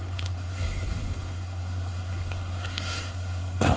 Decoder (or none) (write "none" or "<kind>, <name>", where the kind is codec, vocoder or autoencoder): codec, SNAC